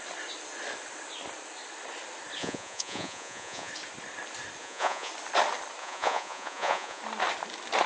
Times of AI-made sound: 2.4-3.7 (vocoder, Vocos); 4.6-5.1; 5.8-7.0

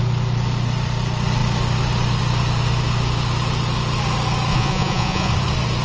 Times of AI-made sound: 4.5-5.3 (vocoder, Vocos)

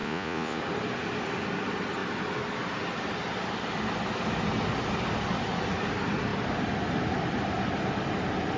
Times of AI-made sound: 0.0-0.6 (vocoder, Vocos)

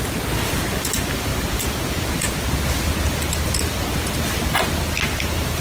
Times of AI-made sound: none

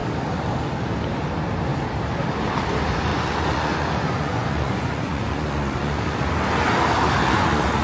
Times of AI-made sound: 3.1-6.3 (vocoder, Vocos); 7.2-7.8

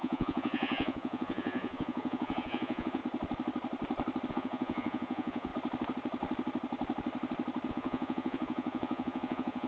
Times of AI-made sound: 0.0-3.0 (vocoder, Vocos); 4.3-5.5; 7.7-9.7

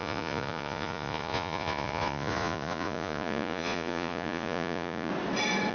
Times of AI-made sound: 0.0-5.1 (vocoder, Vocos)